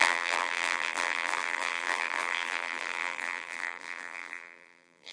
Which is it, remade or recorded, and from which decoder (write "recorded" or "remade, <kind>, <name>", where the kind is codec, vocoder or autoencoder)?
remade, vocoder, BigVGAN v2